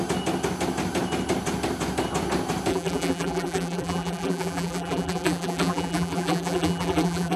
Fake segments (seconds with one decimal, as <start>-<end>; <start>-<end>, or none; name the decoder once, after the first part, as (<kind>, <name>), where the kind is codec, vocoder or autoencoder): 2.7-7.4 (vocoder, BigVGAN v2)